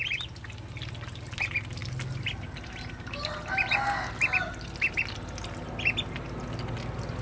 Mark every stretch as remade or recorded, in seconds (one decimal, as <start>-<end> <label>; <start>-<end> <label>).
0.0-7.2 recorded